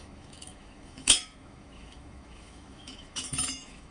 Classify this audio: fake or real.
fake